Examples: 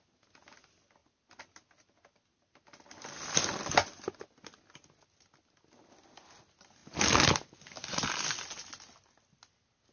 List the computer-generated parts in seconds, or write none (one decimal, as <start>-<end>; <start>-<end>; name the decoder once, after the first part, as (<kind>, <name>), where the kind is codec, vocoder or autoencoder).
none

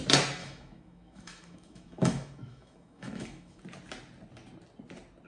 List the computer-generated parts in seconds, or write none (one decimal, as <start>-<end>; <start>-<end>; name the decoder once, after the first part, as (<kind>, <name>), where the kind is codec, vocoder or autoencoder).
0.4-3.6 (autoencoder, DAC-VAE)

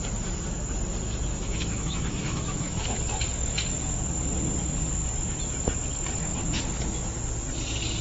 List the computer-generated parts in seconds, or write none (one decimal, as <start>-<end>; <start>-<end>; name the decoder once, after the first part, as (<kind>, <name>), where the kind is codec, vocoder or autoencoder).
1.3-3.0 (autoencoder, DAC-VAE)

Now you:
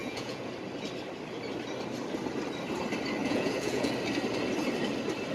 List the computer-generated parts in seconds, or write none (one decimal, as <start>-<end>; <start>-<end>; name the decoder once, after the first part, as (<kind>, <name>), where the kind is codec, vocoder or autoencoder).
0.0-0.5 (vocoder, Vocos); 3.2-3.9